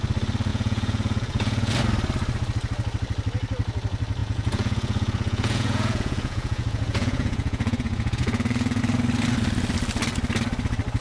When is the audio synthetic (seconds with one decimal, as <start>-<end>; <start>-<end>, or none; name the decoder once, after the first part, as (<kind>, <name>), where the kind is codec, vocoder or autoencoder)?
0.5-1.7 (vocoder, Vocos); 4.2-8.8